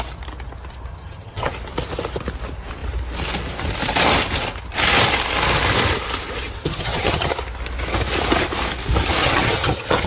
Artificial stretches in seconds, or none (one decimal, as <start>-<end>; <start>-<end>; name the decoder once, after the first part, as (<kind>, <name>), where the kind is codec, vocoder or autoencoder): 0.9-1.5 (vocoder, HiFi-GAN); 6.6-7.4; 9.2-10.1